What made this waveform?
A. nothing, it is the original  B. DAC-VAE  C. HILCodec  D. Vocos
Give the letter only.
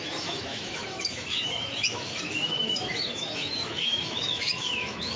B